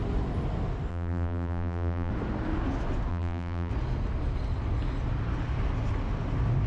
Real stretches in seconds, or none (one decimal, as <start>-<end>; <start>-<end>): 0.0-0.9; 2.1-3.1; 3.7-6.7